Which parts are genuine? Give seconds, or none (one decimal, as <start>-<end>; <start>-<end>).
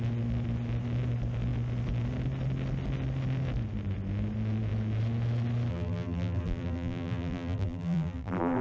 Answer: 0.0-5.7